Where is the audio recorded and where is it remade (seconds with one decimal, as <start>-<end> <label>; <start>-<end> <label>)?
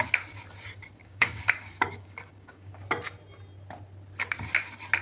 0.0-1.0 recorded; 1.0-2.7 remade; 2.7-5.0 recorded